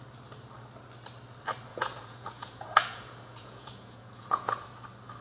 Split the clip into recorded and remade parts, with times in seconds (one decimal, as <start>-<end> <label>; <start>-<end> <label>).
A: 0.0-1.7 recorded; 1.7-4.5 remade; 4.5-5.2 recorded